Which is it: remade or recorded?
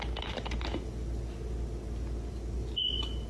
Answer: recorded